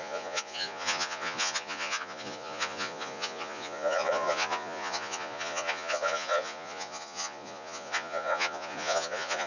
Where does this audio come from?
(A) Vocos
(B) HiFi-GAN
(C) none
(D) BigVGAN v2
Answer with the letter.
A